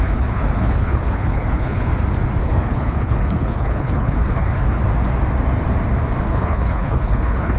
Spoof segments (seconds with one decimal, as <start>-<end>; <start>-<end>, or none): 0.0-1.9; 2.4-4.8; 6.2-7.6